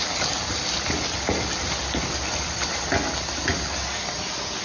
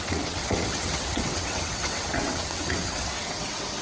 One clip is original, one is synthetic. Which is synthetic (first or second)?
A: second